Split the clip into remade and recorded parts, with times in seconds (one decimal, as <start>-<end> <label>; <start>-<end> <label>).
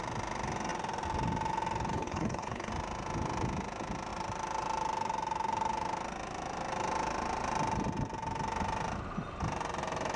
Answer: 0.0-1.9 recorded; 1.9-2.7 remade; 2.7-10.2 recorded